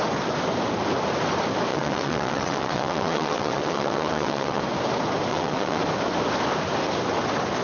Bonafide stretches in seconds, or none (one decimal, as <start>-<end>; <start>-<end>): 0.0-1.7; 4.6-5.3; 5.8-7.6